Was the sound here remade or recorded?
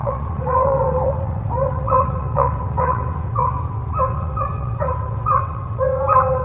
remade